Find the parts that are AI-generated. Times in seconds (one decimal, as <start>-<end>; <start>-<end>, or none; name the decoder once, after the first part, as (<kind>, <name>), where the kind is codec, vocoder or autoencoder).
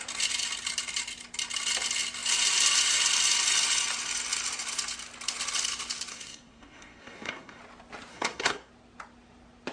6.1-7.6 (codec, SNAC); 8.1-8.7